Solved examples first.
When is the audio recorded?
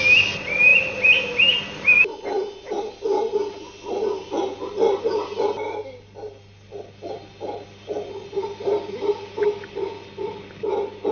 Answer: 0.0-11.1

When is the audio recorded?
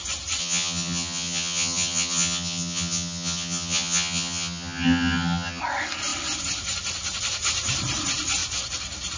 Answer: 0.0-0.4; 5.6-9.2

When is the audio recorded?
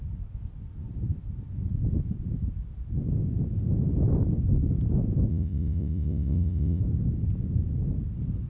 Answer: 0.0-5.3; 6.8-8.5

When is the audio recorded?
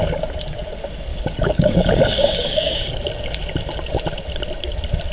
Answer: 0.0-1.1; 2.7-5.1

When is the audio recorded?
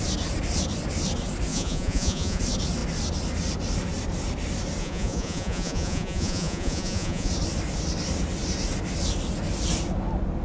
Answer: 0.0-1.5; 2.4-4.8; 7.3-10.4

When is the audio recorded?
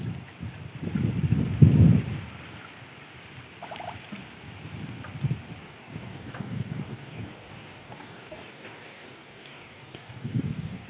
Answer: 0.0-5.6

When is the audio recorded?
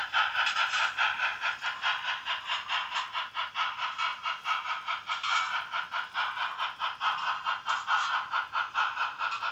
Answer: 0.0-9.5